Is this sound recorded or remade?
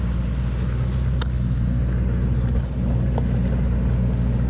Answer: recorded